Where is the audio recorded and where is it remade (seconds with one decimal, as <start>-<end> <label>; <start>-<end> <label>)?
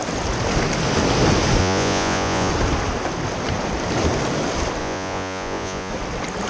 0.0-1.6 recorded; 1.6-2.5 remade; 2.5-4.8 recorded; 4.8-5.9 remade; 5.9-6.5 recorded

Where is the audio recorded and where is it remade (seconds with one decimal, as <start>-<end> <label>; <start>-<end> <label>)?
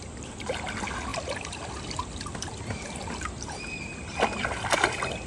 0.0-5.3 recorded